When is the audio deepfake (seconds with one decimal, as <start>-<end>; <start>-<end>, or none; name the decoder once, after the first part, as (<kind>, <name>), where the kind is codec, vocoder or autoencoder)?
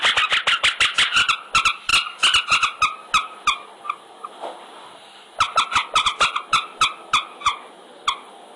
none